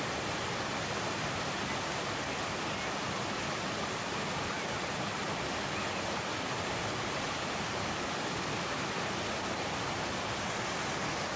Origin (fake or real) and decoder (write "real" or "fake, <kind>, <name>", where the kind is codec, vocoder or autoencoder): real